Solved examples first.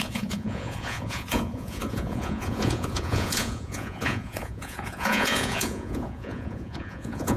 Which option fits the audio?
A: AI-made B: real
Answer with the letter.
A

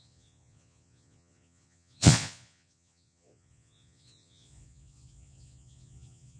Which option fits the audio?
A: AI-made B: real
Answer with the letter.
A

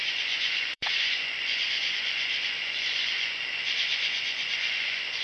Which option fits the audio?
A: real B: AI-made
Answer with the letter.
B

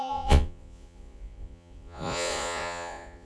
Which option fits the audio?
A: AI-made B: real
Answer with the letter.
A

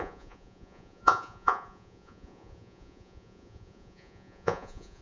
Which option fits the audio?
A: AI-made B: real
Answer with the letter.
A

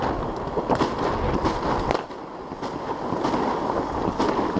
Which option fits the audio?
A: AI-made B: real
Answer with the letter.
B